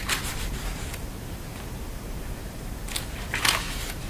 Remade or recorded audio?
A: remade